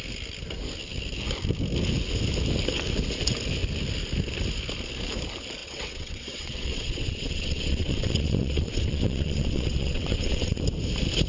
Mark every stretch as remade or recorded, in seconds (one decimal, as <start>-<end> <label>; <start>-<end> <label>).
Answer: 0.0-5.6 recorded; 5.6-10.6 remade; 10.6-11.3 recorded